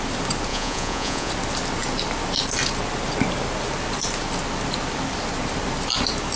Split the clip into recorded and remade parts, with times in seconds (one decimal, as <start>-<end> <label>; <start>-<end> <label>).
0.0-0.5 recorded; 0.5-1.3 remade; 1.3-6.4 recorded